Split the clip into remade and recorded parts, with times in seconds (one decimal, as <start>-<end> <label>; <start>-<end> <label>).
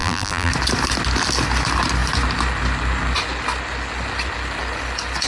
0.0-0.5 remade; 0.5-5.3 recorded